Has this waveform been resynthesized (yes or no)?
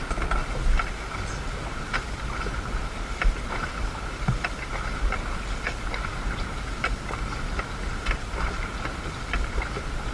no